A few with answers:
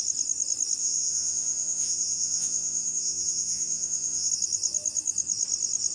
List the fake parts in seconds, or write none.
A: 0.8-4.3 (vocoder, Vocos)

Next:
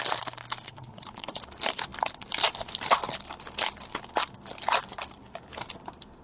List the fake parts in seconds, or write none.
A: 0.6-1.4 (vocoder, Vocos)

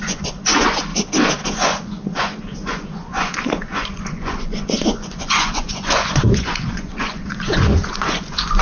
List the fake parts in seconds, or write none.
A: 0.0-0.9 (vocoder, Vocos); 1.5-8.6

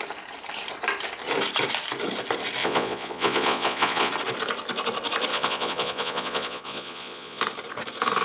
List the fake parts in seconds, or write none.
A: 2.6-4.1 (vocoder, Vocos); 5.3-7.4

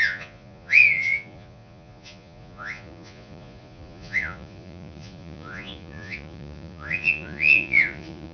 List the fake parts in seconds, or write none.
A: 0.0-8.3 (vocoder, Vocos)

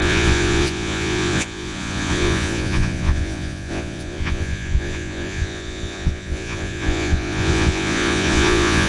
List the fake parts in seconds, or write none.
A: 0.0-8.9 (vocoder, Vocos)

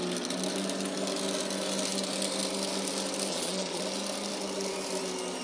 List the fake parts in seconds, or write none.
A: 3.3-3.8 (vocoder, Vocos)

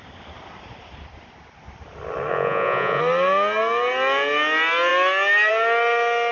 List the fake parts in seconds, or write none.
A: 2.3-3.0 (vocoder, Vocos)